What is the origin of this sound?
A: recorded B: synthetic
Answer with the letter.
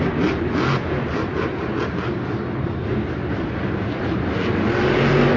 A